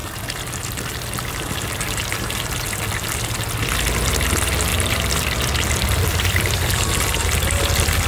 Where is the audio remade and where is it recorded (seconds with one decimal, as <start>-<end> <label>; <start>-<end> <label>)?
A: 0.0-8.1 recorded